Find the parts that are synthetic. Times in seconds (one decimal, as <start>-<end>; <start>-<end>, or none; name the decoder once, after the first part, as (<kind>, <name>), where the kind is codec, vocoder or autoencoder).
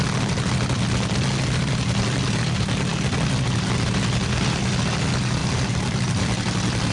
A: 5.4-6.2 (vocoder, BigVGAN v2)